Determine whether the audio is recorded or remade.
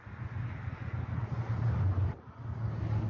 recorded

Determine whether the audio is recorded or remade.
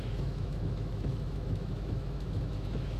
remade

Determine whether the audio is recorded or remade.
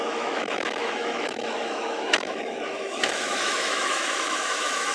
remade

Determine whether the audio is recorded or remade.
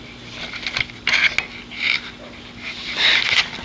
recorded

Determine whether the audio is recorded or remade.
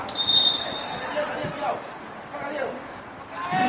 recorded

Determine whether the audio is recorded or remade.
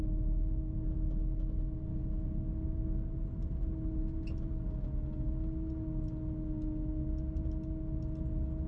recorded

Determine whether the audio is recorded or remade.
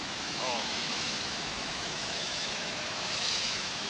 remade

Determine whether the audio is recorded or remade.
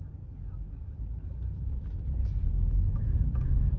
remade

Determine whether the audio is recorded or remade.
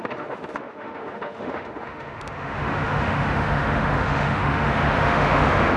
remade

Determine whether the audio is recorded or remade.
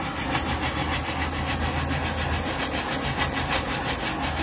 recorded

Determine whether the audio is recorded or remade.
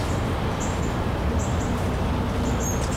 recorded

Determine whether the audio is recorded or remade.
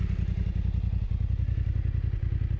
recorded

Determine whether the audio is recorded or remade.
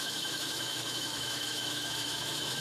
remade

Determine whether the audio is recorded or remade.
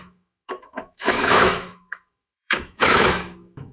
remade